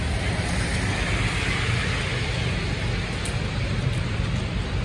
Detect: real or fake real